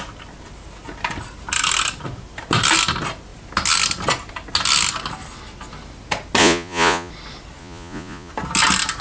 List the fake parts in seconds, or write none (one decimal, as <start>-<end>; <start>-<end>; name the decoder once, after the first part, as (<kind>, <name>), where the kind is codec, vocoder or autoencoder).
6.4-7.1 (vocoder, Vocos); 7.6-8.3